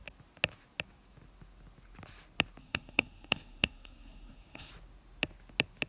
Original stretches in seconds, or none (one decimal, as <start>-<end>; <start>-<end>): 0.0-2.6; 4.7-5.9

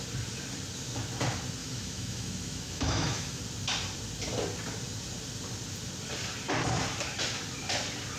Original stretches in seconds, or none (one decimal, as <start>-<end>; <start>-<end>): 0.0-1.6; 3.4-8.2